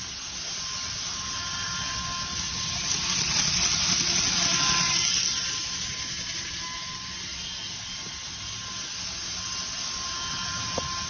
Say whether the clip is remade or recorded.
recorded